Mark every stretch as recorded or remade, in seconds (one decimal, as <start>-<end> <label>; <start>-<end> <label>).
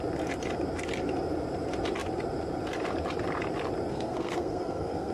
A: 0.0-3.9 recorded; 3.9-5.1 remade